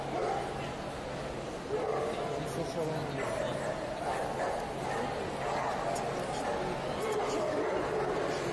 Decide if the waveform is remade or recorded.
recorded